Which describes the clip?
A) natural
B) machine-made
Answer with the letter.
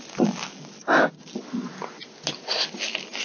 A